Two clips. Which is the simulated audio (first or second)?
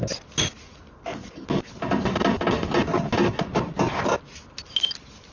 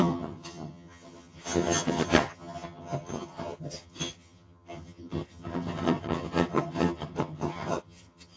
second